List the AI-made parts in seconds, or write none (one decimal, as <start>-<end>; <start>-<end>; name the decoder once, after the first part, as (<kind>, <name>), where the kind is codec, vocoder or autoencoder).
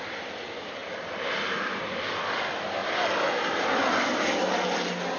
none